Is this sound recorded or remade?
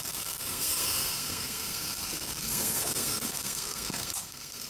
remade